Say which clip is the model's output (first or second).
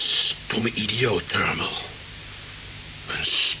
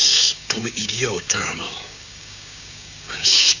second